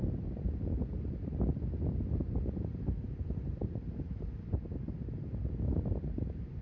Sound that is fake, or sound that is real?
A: real